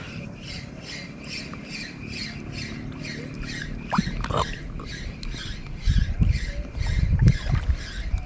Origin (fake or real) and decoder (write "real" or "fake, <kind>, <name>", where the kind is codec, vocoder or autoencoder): real